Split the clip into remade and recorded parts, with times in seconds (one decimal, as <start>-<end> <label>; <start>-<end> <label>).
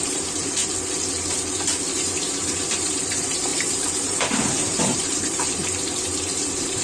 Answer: 0.0-0.6 remade; 0.6-1.9 recorded; 1.9-6.8 remade